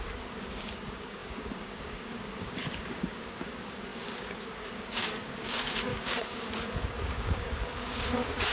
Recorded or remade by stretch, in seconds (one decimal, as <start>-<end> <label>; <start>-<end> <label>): 0.0-8.5 remade